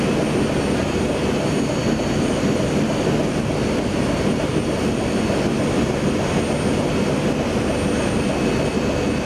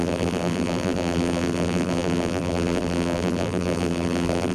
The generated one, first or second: second